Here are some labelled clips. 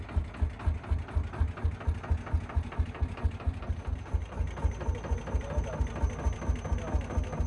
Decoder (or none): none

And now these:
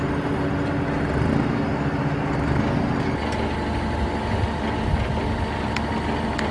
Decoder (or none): none